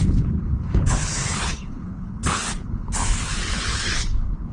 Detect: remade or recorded remade